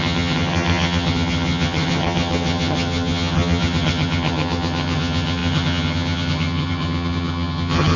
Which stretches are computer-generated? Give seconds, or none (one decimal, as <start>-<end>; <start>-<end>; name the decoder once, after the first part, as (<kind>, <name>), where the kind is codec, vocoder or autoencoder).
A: 0.0-8.0 (vocoder, HiFi-GAN)